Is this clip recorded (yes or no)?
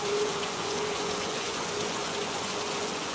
no